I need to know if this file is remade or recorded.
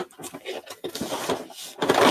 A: recorded